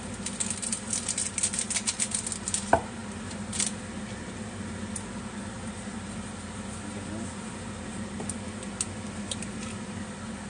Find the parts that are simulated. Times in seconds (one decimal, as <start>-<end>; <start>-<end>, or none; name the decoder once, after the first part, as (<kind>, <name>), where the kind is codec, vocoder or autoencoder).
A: none